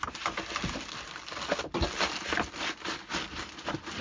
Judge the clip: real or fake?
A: real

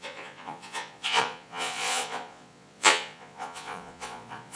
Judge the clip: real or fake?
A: fake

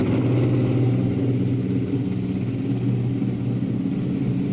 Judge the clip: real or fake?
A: real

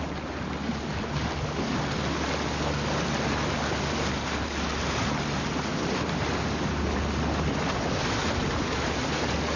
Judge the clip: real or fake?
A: real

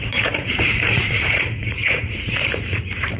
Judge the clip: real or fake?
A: fake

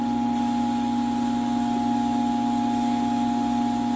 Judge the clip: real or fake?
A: real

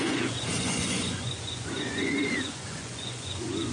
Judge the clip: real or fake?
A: fake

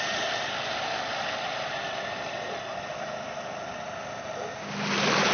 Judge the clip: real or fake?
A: real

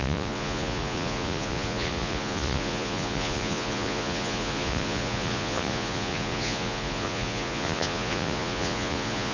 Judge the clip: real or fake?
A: fake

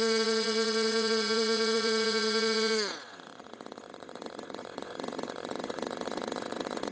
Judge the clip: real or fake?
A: fake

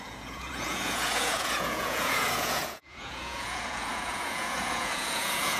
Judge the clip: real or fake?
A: fake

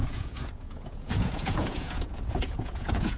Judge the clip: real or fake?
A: fake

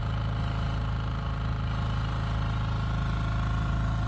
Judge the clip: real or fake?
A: real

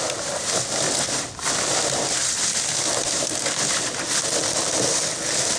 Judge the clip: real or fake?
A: real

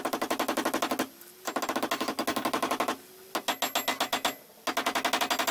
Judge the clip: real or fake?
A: real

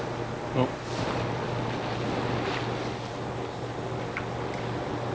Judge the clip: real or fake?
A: real